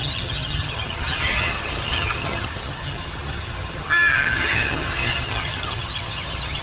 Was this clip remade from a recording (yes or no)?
yes